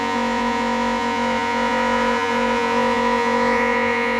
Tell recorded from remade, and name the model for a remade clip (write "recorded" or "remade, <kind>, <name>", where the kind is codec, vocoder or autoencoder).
remade, vocoder, Vocos